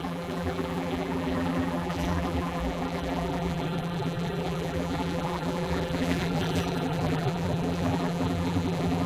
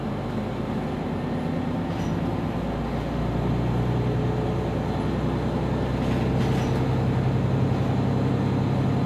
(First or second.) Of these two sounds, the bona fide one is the second